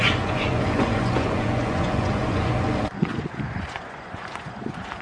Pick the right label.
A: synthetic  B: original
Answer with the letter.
A